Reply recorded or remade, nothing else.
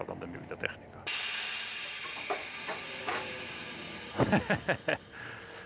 recorded